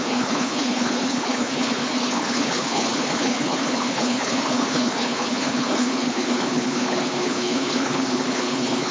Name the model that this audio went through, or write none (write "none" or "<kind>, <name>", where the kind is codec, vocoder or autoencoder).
codec, HILCodec